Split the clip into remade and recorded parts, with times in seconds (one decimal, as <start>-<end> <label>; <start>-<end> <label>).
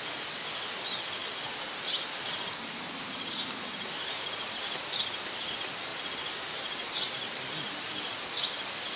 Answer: 0.0-1.2 recorded; 1.2-5.2 remade; 5.2-5.9 recorded; 5.9-8.2 remade; 8.2-9.0 recorded